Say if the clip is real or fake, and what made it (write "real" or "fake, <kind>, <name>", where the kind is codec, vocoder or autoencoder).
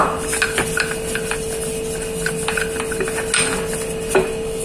real